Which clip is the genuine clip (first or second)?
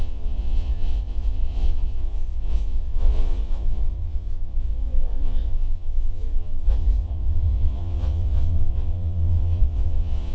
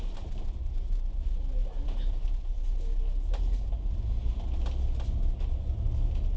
second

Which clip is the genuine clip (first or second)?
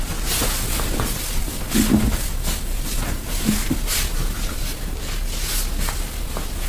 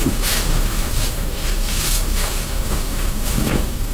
first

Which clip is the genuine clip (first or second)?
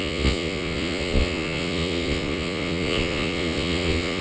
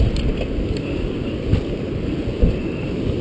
second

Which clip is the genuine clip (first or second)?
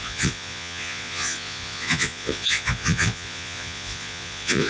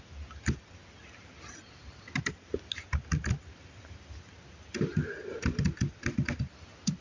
second